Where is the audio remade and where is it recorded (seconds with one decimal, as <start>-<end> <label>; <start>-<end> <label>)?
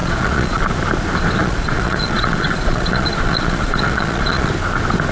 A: 0.0-0.6 remade; 0.6-1.4 recorded; 1.4-4.5 remade; 4.5-5.1 recorded